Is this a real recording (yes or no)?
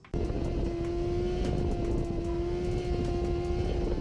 yes